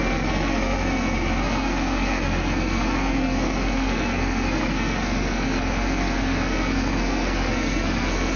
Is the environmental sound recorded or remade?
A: remade